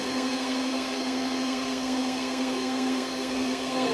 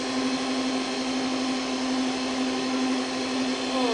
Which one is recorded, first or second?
second